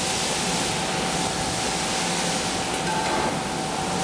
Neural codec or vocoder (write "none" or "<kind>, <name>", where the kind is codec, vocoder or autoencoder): none